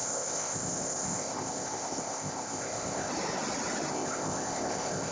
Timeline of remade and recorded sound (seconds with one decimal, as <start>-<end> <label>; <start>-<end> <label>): 0.0-3.1 remade; 3.1-3.9 recorded; 3.9-5.1 remade